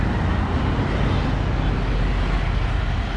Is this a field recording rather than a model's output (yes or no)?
yes